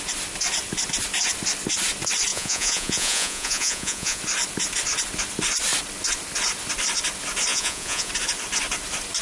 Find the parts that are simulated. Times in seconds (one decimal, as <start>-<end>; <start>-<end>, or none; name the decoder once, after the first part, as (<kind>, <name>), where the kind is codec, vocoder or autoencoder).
2.3-4.2 (vocoder, Vocos); 7.5-8.1